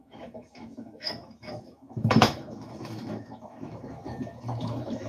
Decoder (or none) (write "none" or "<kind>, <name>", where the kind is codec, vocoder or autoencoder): autoencoder, DAC-VAE